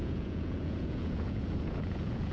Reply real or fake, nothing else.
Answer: fake